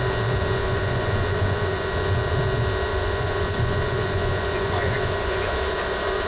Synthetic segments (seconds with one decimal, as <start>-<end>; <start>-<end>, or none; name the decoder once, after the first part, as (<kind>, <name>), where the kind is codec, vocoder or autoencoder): 0.6-1.9 (vocoder, Vocos); 2.9-5.5